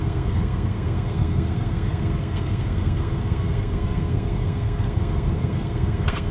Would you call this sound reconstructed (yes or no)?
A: yes